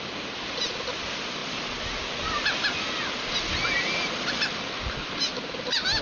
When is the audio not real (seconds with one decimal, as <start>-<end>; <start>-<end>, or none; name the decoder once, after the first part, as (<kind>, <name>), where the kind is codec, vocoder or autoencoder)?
none